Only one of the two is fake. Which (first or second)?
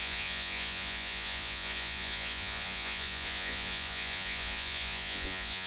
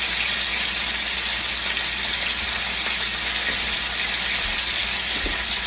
first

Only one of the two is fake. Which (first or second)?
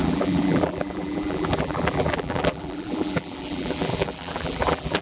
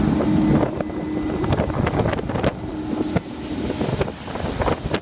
first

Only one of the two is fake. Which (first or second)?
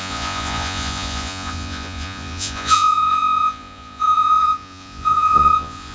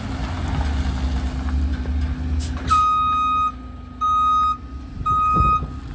first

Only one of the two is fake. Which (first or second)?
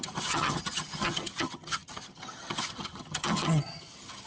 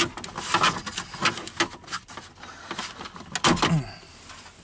first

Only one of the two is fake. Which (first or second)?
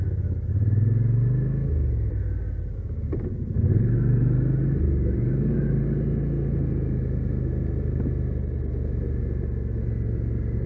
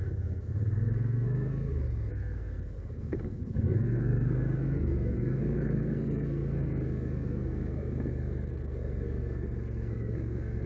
second